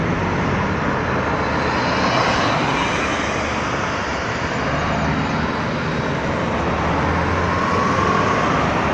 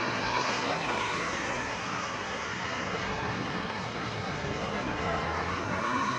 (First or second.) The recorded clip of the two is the first